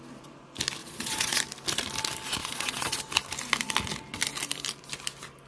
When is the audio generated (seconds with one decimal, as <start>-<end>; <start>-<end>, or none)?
0.8-1.4; 2.4-3.0